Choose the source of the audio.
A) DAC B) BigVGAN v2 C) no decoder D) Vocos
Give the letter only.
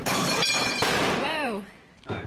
B